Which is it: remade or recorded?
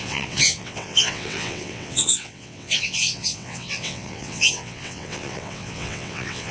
remade